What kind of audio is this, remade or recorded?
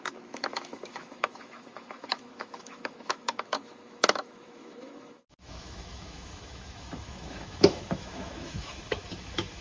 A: remade